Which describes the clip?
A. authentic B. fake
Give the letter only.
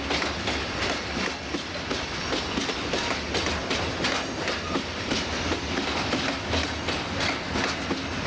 A